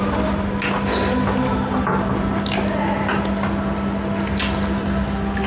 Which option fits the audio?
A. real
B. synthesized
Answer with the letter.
A